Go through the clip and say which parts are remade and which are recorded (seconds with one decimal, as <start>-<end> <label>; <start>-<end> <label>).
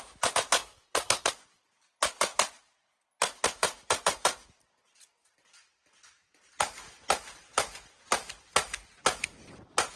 0.0-0.6 recorded; 0.6-1.3 remade; 1.3-10.0 recorded